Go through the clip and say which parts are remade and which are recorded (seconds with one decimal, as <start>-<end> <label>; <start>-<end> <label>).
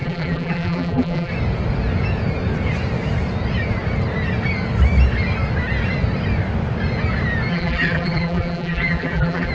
0.0-1.3 remade; 1.3-7.5 recorded; 7.5-9.5 remade